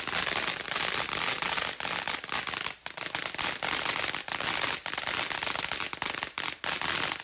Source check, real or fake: real